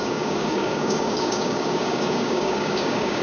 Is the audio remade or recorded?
remade